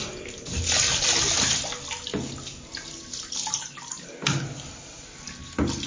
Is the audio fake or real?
real